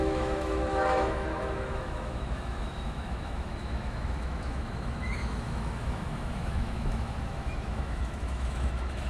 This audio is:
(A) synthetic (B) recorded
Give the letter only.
A